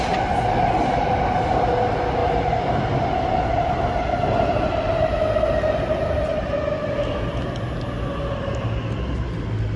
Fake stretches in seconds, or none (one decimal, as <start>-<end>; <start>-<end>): none